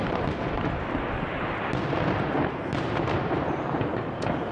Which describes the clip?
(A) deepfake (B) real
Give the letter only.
B